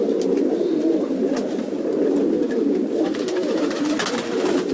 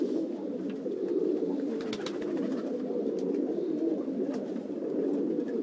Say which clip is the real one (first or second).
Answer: first